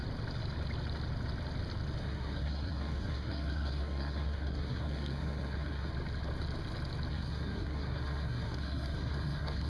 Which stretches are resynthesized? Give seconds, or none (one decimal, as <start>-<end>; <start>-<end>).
2.0-5.9; 7.1-9.7